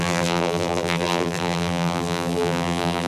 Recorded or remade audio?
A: remade